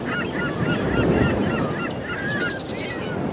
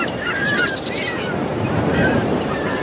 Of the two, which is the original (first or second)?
first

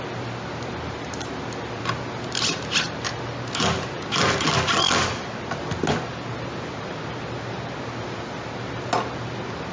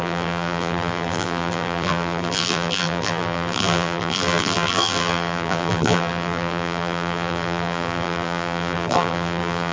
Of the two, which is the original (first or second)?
first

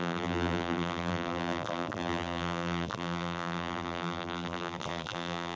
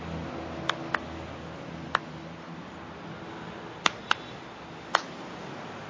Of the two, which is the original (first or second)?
second